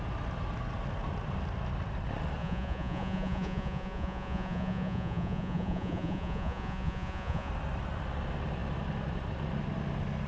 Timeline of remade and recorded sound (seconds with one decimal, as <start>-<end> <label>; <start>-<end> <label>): 0.0-2.4 recorded; 2.4-7.5 remade; 7.5-10.3 recorded